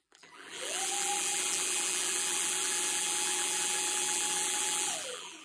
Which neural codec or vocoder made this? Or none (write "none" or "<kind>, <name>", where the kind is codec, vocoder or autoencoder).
vocoder, BigVGAN v2